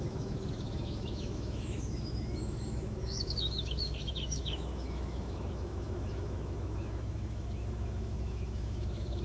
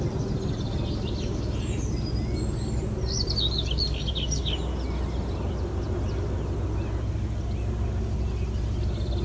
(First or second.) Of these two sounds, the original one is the second